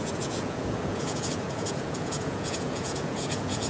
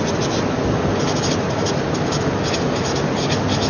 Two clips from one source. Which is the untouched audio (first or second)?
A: second